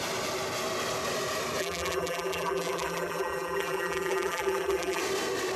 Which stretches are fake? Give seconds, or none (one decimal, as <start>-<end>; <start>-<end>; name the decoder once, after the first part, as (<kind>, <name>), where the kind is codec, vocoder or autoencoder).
1.6-5.0 (vocoder, BigVGAN v2)